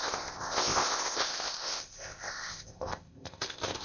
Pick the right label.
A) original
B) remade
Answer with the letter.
B